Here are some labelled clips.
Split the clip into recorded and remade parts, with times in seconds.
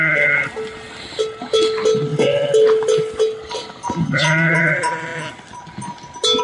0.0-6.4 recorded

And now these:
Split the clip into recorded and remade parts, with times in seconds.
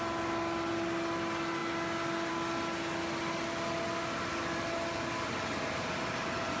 0.0-6.6 recorded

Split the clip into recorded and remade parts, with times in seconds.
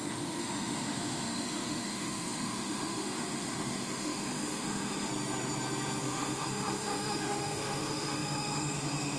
0.0-5.1 remade; 5.1-6.0 recorded; 6.0-9.2 remade